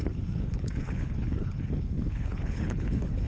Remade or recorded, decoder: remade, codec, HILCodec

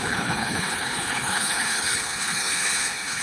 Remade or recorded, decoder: remade, codec, HILCodec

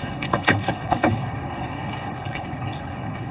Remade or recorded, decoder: remade, codec, HILCodec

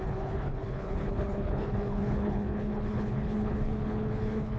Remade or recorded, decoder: remade, codec, HILCodec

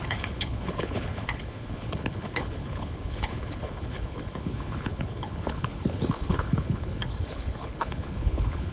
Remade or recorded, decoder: remade, codec, HILCodec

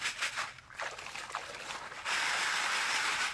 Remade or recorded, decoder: recorded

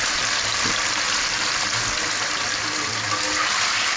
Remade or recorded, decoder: recorded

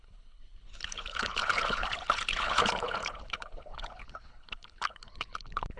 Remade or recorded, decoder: remade, codec, HILCodec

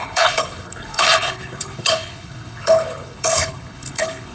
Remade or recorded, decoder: remade, codec, HILCodec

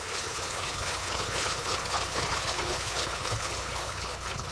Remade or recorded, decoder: remade, codec, HILCodec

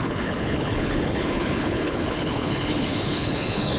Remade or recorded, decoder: remade, codec, HILCodec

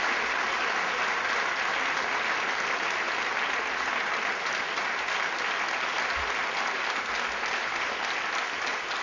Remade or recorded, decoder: recorded